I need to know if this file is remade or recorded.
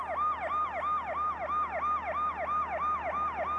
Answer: recorded